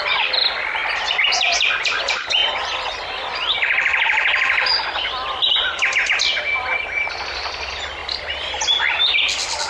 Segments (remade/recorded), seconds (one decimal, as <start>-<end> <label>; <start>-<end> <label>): 0.0-0.8 recorded; 0.8-1.7 remade; 1.7-8.0 recorded; 8.0-8.5 remade; 8.5-9.7 recorded